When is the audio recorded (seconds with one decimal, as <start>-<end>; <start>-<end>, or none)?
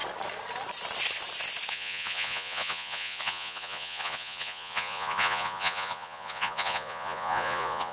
0.0-1.7